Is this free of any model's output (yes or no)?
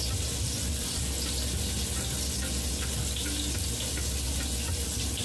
yes